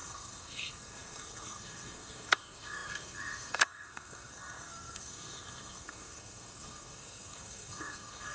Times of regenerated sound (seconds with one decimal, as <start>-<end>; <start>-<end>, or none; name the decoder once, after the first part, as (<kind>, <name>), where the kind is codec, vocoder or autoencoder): 0.0-8.3 (codec, SNAC)